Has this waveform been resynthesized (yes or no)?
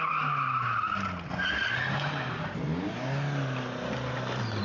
no